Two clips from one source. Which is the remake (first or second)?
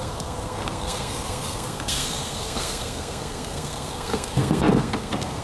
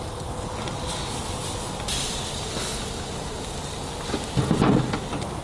first